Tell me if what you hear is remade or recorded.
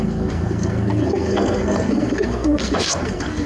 remade